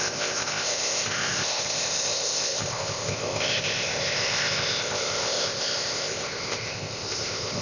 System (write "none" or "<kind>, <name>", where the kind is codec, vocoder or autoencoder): codec, ZipCodec